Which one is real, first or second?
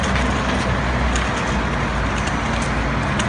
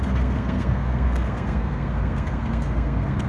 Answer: first